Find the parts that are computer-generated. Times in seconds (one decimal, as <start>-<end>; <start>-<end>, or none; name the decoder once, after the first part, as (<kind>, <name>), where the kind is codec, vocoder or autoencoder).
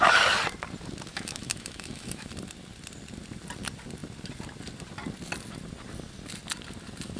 1.1-2.3 (autoencoder, DAC-VAE)